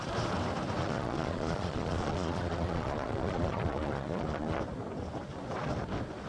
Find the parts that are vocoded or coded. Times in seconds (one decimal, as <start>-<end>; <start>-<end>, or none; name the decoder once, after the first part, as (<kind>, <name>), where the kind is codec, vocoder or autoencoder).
0.8-4.6 (vocoder, Vocos)